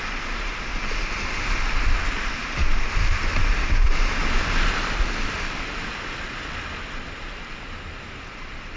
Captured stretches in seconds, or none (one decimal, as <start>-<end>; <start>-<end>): 0.0-8.8